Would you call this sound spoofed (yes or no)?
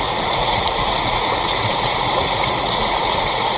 yes